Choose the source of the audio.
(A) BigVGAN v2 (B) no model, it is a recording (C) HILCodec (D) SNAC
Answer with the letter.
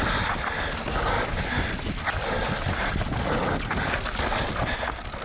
B